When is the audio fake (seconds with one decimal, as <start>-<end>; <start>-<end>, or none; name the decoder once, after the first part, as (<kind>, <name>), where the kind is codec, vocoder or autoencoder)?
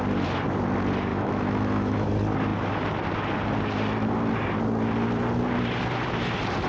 1.1-2.1 (autoencoder, DAC-VAE)